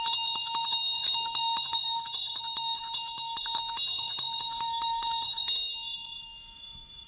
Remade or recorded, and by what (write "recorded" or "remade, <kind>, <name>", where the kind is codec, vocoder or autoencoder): remade, autoencoder, DAC-VAE